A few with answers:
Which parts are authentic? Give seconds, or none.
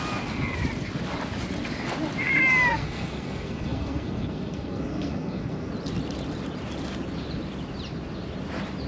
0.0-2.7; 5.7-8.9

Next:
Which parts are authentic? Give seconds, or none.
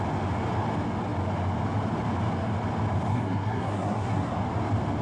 0.0-3.1; 4.4-5.0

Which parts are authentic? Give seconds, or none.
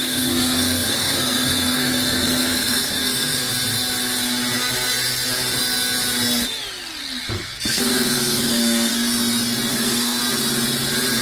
3.5-7.3; 8.9-9.7; 10.2-11.2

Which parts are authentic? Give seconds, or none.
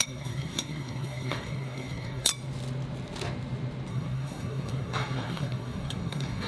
2.3-3.9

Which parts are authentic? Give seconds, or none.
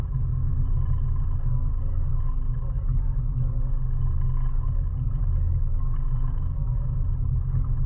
0.0-7.9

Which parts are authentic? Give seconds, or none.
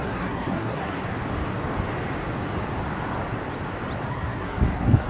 1.0-4.1